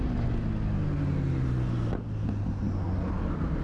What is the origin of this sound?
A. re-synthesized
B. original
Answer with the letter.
B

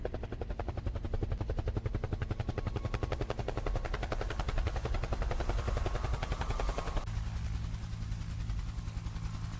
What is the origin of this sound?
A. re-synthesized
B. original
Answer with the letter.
B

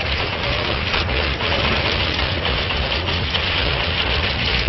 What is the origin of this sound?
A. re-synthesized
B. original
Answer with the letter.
A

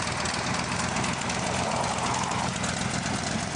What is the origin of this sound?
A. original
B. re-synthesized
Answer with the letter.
A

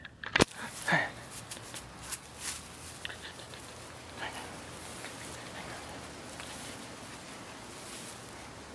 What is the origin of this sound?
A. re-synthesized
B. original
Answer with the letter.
B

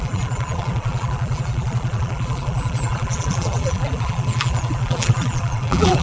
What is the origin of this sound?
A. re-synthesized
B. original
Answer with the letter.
A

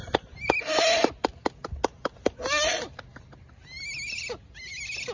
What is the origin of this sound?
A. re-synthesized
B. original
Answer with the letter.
B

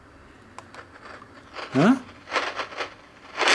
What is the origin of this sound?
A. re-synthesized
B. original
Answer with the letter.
B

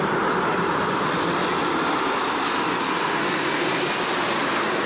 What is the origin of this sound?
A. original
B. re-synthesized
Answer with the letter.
A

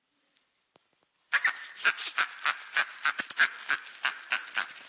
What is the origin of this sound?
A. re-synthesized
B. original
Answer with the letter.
B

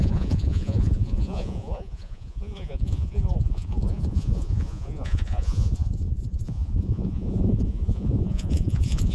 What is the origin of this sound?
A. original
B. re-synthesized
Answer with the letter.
B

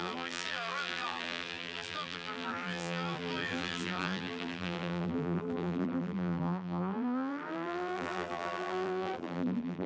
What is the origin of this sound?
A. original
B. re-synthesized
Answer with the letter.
B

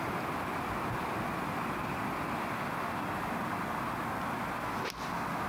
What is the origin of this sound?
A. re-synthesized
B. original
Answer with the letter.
B